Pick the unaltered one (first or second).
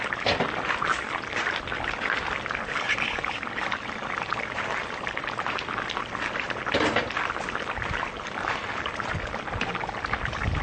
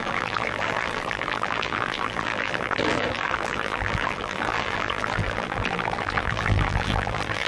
first